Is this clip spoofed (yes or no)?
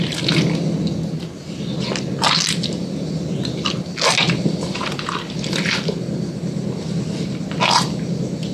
no